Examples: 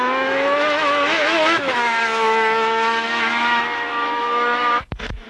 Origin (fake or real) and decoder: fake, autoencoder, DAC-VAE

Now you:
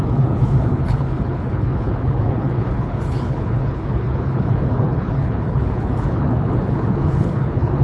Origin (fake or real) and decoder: fake, codec, HILCodec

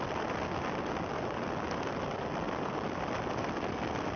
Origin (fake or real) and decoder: real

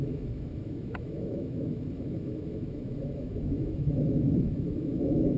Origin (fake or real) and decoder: fake, autoencoder, DAC-VAE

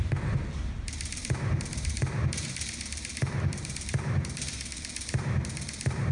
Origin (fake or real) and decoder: fake, vocoder, BigVGAN v2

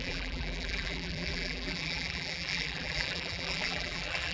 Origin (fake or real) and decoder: fake, vocoder, BigVGAN v2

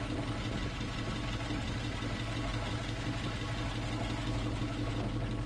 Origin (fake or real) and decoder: real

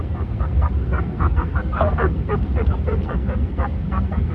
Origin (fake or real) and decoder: fake, codec, SNAC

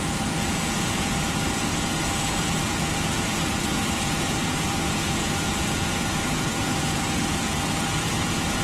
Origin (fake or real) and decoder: fake, vocoder, Vocos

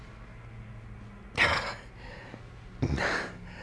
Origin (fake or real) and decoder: real